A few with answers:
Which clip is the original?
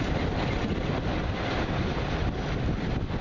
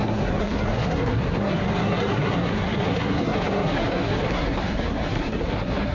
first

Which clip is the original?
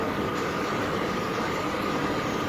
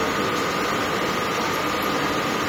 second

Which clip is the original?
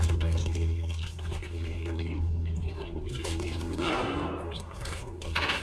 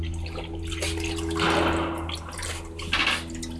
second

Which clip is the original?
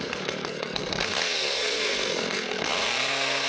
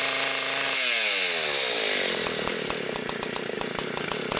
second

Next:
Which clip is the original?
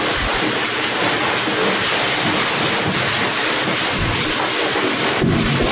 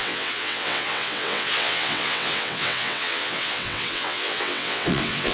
first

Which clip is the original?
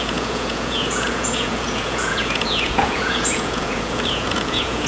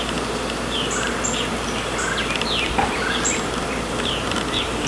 second